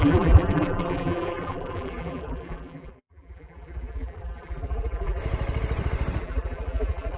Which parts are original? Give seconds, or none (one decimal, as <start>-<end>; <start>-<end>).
5.2-6.2